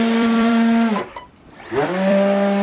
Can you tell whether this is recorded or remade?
remade